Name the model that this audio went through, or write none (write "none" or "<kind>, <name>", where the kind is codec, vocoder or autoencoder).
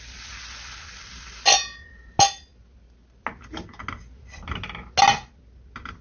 none